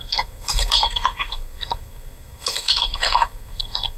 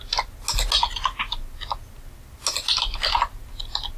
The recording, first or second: second